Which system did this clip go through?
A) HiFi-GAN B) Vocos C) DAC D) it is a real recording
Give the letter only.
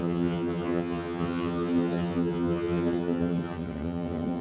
A